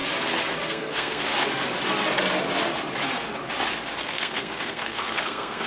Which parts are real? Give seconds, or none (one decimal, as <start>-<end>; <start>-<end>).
0.0-0.7; 1.3-4.0